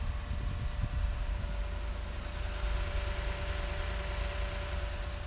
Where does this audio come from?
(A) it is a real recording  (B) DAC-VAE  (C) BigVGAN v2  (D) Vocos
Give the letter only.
A